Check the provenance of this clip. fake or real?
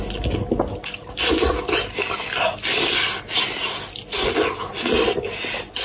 real